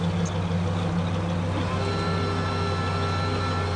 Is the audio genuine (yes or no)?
yes